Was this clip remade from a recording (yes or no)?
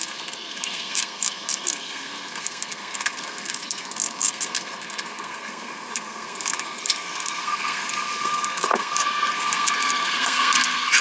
yes